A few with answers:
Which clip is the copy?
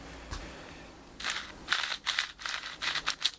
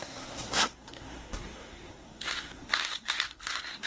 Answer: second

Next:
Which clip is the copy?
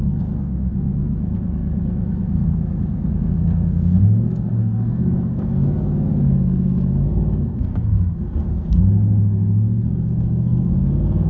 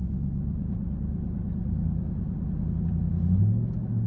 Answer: first